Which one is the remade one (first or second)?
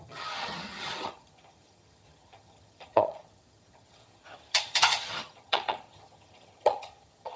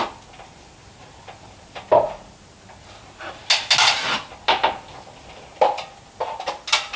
first